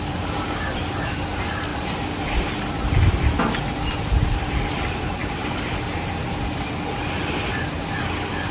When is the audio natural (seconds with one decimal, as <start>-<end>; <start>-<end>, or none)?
0.0-1.7; 2.7-5.2; 7.9-8.5